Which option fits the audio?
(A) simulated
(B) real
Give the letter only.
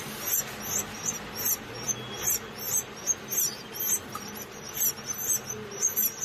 B